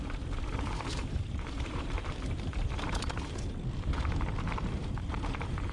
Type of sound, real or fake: fake